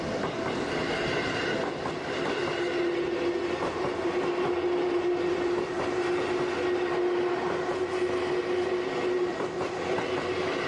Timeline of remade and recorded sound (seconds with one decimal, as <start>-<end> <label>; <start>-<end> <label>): 0.0-9.3 recorded; 9.3-10.0 remade; 10.0-10.7 recorded